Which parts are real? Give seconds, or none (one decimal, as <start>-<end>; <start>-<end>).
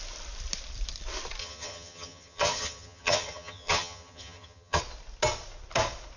0.0-1.4; 4.8-6.2